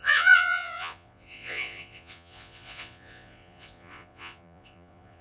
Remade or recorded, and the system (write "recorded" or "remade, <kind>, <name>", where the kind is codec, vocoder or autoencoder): remade, vocoder, Vocos